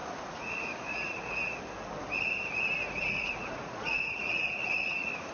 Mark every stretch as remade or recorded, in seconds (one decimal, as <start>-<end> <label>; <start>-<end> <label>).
0.0-1.6 remade; 1.6-3.0 recorded; 3.0-5.3 remade